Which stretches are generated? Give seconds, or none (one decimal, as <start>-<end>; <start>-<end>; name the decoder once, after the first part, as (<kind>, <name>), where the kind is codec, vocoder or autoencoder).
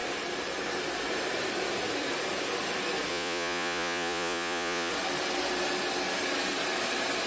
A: 3.1-4.9 (vocoder, Vocos)